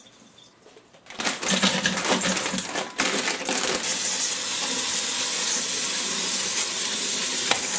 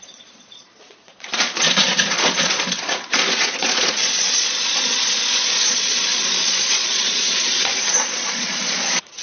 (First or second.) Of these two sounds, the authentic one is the first